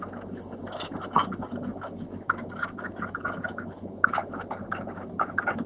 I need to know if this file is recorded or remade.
remade